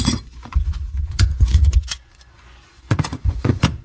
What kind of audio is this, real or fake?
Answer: fake